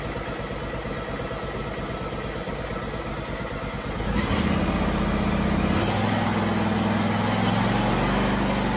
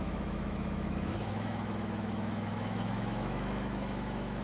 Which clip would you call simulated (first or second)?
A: second